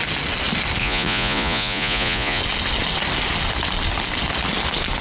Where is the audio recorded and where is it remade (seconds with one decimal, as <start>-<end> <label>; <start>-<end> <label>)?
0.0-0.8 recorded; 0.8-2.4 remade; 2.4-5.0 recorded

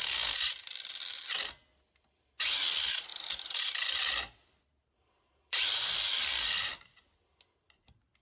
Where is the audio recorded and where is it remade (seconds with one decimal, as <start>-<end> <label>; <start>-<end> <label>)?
0.0-8.2 recorded

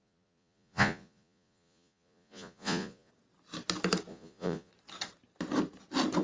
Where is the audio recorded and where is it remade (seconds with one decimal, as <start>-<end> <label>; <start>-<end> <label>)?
0.0-3.1 remade; 3.1-4.1 recorded; 4.1-4.7 remade; 4.7-6.2 recorded